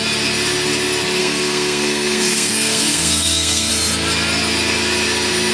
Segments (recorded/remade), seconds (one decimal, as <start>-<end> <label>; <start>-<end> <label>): 0.0-1.2 recorded; 1.2-3.7 remade; 3.7-5.5 recorded